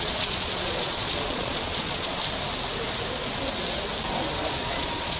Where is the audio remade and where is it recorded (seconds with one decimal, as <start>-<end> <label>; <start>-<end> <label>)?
0.0-2.2 remade; 2.2-4.5 recorded; 4.5-5.2 remade